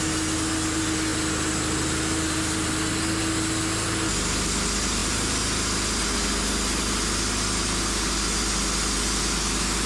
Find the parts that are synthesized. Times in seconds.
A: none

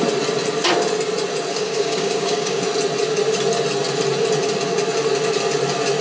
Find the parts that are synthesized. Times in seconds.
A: 1.5-2.6 (codec, DAC)

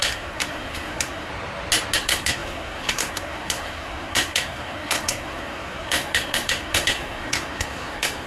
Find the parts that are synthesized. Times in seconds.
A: 0.0-1.3 (codec, SNAC); 2.0-8.3

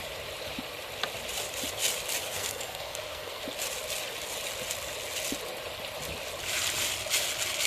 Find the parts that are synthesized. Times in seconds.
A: 2.2-3.4 (codec, SNAC)